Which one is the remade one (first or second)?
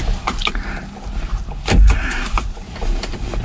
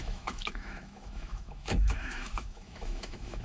second